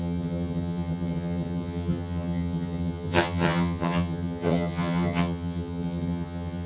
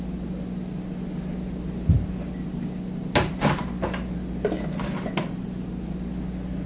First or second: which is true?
second